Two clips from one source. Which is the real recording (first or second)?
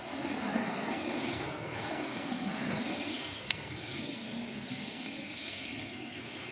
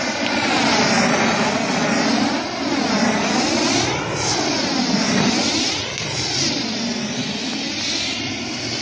second